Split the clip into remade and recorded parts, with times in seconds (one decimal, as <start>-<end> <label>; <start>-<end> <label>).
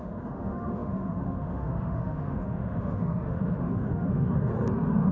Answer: 0.0-4.5 remade; 4.5-5.1 recorded